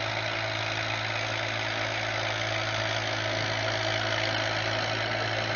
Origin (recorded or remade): recorded